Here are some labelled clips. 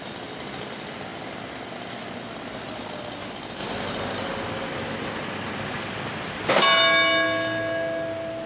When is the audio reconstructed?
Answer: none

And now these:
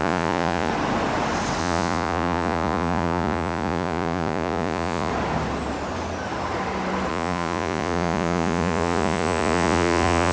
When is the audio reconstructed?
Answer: 0.0-0.7; 1.6-5.1; 7.1-10.3